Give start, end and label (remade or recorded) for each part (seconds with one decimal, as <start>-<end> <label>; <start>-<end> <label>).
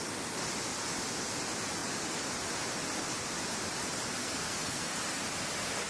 0.0-4.2 recorded; 4.2-5.2 remade; 5.2-5.9 recorded